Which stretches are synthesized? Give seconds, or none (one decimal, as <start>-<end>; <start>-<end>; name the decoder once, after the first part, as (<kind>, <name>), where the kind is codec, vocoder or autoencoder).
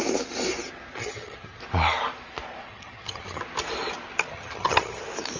1.0-1.6 (vocoder, HiFi-GAN); 2.7-3.4; 4.3-5.0